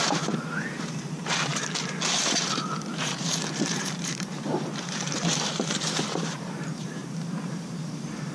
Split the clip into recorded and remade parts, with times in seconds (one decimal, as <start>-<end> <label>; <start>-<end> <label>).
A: 0.0-8.3 remade